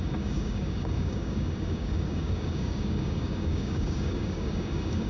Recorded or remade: remade